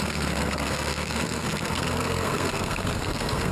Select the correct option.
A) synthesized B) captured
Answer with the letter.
A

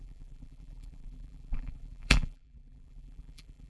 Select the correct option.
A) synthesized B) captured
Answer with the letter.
A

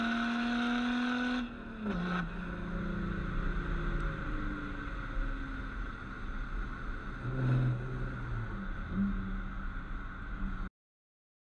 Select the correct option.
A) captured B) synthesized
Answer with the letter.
A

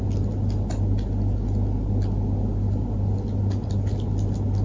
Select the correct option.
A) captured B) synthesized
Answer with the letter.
A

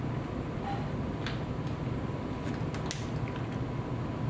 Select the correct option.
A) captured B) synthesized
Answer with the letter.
A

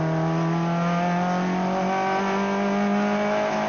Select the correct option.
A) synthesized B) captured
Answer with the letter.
B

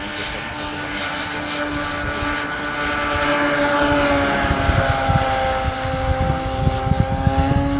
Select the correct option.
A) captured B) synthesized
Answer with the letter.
A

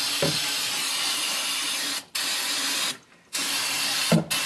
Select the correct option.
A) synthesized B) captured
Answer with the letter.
B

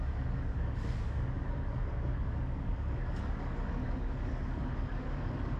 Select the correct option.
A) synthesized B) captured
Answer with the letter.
A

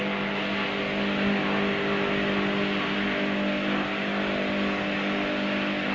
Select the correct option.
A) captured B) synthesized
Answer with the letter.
A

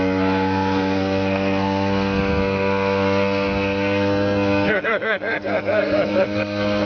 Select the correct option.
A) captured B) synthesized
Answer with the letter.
B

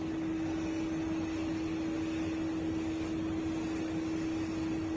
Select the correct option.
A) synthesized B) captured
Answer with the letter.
B